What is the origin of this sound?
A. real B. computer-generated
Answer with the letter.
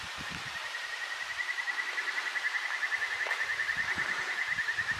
A